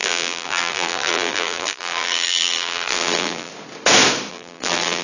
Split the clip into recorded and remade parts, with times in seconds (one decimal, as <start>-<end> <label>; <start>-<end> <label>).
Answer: 0.0-3.5 remade; 3.5-4.3 recorded; 4.3-5.0 remade